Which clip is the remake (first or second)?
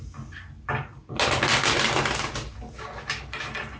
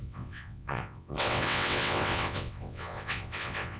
second